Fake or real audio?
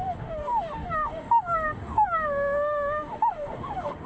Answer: fake